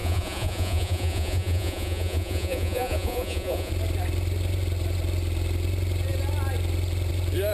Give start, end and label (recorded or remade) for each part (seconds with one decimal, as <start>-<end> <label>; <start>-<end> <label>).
0.0-3.7 remade; 3.7-7.5 recorded